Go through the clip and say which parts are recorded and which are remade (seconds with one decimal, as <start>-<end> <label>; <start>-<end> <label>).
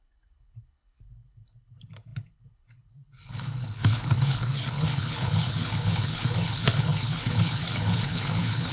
0.0-8.7 remade